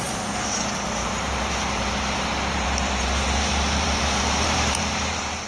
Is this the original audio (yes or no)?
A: no